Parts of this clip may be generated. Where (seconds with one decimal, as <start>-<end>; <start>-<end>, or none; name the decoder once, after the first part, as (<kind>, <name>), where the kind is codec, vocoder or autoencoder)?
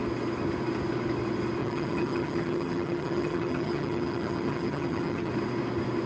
1.6-5.3 (vocoder, HiFi-GAN)